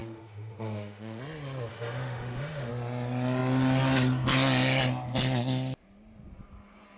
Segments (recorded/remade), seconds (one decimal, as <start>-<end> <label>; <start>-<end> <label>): 0.0-1.2 remade; 1.2-1.7 recorded; 1.7-2.7 remade; 2.7-7.0 recorded